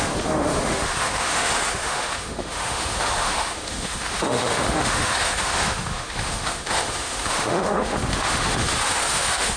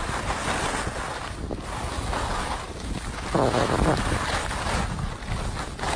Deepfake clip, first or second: first